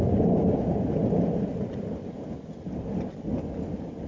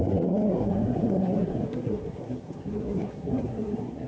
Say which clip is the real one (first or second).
first